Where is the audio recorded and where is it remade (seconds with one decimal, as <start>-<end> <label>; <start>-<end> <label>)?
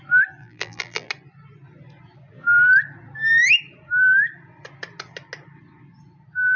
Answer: 0.0-0.4 recorded; 0.4-1.1 remade; 1.1-6.6 recorded